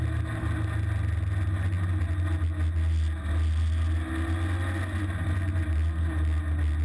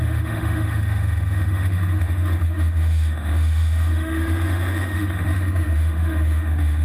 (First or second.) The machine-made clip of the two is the second